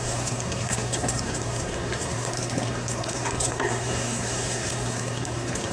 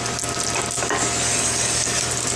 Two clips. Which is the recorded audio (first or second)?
second